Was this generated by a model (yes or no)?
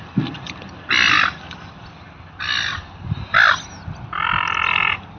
no